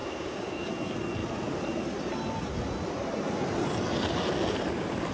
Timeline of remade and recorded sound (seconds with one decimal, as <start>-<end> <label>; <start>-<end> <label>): 0.0-0.7 remade; 0.7-5.1 recorded